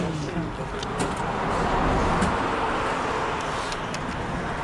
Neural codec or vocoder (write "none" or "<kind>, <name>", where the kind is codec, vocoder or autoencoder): none